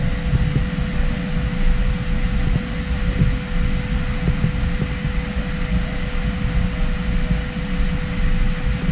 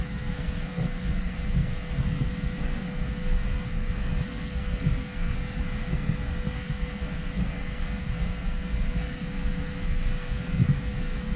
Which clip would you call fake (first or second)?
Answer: second